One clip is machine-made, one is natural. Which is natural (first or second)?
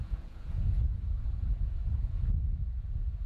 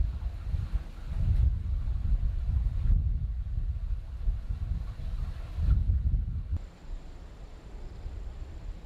second